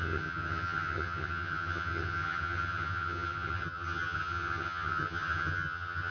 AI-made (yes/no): yes